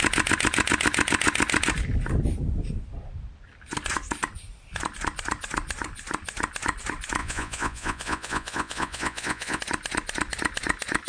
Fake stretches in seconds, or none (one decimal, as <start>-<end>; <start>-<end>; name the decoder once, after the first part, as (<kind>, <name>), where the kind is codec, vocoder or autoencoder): 7.2-9.6 (vocoder, Vocos)